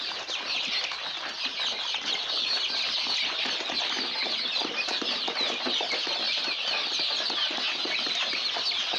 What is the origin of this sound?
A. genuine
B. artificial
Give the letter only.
A